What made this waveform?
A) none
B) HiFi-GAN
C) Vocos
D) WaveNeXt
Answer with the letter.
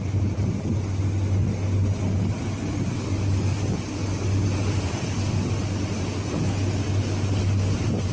A